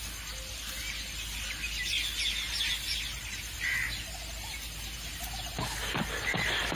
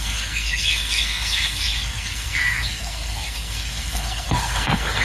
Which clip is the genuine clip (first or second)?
first